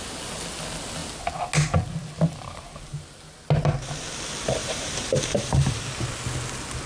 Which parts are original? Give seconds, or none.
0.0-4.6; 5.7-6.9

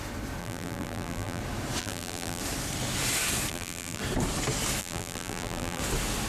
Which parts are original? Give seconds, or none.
0.0-0.4; 1.4-1.8; 2.4-3.5; 4.0-4.8; 5.8-6.3

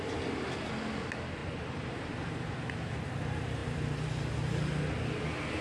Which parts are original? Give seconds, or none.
0.0-1.4; 3.2-5.6

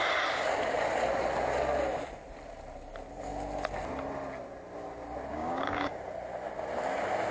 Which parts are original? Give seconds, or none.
0.0-5.3; 6.0-7.3

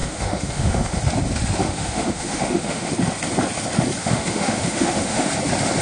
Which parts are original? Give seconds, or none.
1.0-1.6; 2.9-4.0; 5.3-5.8

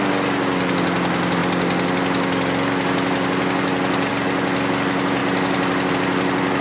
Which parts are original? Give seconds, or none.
0.0-6.6